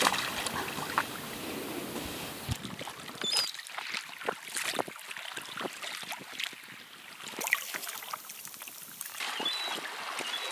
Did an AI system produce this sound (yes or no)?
no